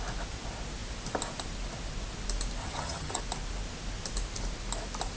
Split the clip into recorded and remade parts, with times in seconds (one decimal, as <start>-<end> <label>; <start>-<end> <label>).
0.0-2.6 recorded; 2.6-3.2 remade; 3.2-5.2 recorded